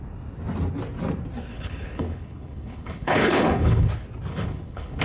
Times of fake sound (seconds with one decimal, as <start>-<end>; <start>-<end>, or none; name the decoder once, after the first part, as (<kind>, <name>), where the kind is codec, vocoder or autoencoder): 1.5-3.9 (codec, HILCodec); 4.3-5.0